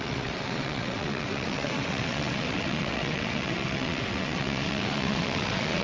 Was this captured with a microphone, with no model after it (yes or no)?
no